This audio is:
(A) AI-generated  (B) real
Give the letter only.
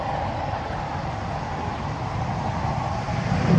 B